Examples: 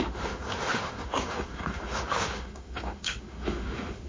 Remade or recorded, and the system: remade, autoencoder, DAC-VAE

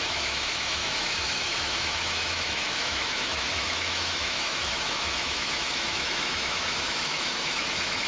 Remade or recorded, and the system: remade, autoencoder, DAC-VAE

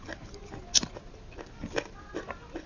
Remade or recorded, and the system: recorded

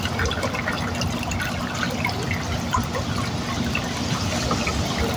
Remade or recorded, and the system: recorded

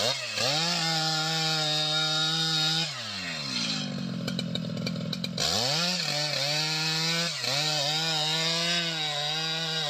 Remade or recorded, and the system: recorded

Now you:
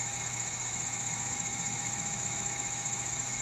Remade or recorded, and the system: remade, autoencoder, DAC-VAE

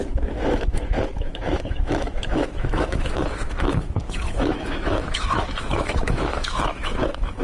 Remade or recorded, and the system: remade, autoencoder, DAC-VAE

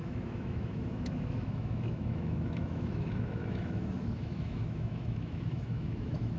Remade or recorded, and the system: remade, autoencoder, DAC-VAE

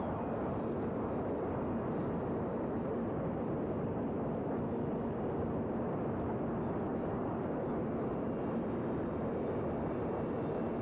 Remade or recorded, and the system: recorded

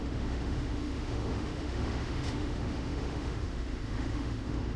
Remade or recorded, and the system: remade, autoencoder, DAC-VAE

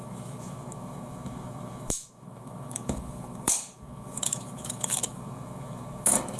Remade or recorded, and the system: remade, autoencoder, DAC-VAE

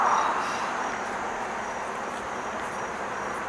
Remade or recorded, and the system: recorded